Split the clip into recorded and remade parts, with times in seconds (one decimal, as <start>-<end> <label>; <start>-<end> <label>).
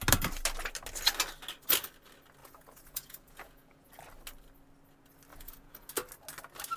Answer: 0.0-2.4 recorded; 2.4-3.9 remade; 3.9-5.3 recorded; 5.3-5.9 remade; 5.9-6.8 recorded